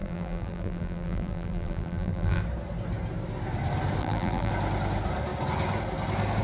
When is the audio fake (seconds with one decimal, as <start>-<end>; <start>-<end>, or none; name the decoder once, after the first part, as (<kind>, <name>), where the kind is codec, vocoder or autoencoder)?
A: 0.0-2.4 (vocoder, BigVGAN v2); 4.0-4.5